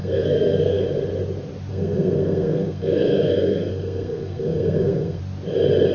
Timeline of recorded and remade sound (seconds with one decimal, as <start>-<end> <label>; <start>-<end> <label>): 0.0-0.8 remade; 0.8-1.7 recorded; 1.7-5.2 remade; 5.2-5.9 recorded